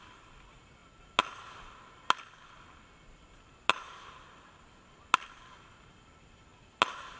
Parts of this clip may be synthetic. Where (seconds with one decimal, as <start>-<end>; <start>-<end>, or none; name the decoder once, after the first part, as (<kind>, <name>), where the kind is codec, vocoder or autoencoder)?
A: none

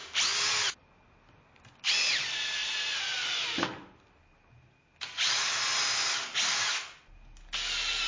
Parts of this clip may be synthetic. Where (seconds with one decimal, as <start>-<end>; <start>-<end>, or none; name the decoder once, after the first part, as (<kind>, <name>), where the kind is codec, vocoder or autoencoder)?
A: none

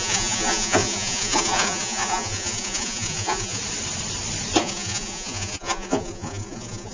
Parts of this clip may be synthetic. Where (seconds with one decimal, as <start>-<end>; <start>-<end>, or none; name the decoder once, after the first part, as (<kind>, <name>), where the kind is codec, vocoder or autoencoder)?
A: 0.0-3.6 (vocoder, Vocos); 4.6-6.9

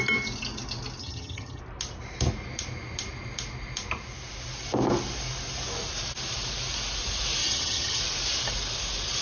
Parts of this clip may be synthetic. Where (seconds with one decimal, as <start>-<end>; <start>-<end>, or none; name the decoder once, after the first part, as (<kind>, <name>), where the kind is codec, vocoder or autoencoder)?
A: 1.0-1.6 (vocoder, HiFi-GAN); 7.4-8.0

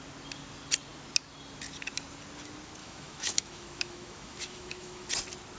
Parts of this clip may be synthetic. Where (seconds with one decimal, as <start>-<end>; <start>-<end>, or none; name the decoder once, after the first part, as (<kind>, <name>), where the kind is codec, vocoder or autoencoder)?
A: 2.8-5.1 (autoencoder, DAC-VAE)